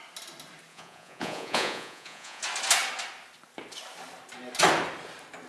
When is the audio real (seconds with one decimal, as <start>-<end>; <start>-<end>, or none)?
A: 0.0-0.7; 2.4-5.5